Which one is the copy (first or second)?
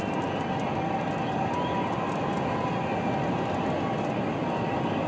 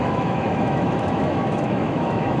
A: second